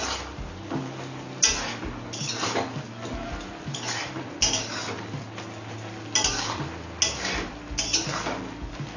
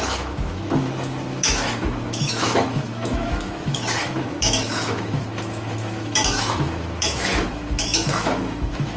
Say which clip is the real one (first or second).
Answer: first